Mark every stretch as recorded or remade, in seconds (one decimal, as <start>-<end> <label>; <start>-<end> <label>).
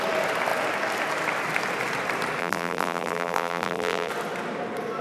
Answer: 0.0-2.4 recorded; 2.4-4.1 remade; 4.1-5.0 recorded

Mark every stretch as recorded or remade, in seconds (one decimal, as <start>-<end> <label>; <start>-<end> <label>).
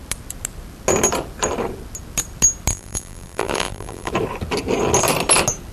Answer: 0.0-2.7 recorded; 2.7-4.1 remade; 4.1-5.7 recorded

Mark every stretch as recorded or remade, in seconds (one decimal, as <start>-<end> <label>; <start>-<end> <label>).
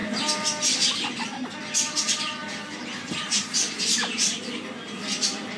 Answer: 0.0-2.4 recorded; 2.4-3.1 remade; 3.1-5.6 recorded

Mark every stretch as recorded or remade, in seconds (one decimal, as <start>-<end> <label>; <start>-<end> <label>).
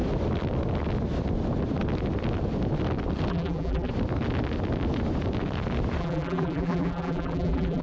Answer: 0.0-3.3 recorded; 3.3-3.9 remade; 3.9-6.0 recorded; 6.0-7.8 remade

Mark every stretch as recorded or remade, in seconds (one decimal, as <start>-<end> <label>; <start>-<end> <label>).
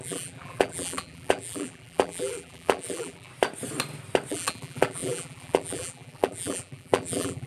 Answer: 0.0-3.3 remade; 3.3-4.3 recorded; 4.3-7.5 remade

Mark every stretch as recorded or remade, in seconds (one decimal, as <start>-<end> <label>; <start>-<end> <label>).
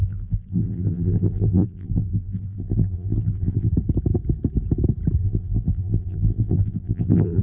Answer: 0.0-3.7 remade; 3.7-5.2 recorded; 5.2-7.4 remade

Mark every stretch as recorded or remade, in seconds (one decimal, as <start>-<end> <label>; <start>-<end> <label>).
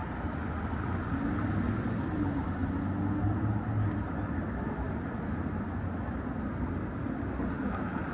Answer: 0.0-8.1 recorded